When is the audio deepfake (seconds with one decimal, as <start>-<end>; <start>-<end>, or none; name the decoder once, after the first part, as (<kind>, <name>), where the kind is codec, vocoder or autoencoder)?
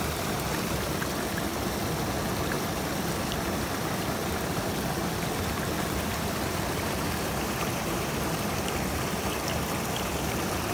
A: 0.0-1.5 (vocoder, BigVGAN v2); 3.6-10.7